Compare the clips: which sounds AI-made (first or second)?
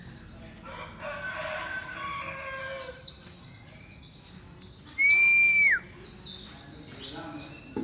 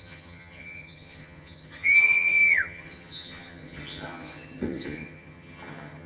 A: second